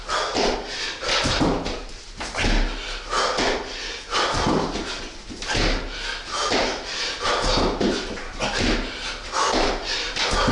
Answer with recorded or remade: recorded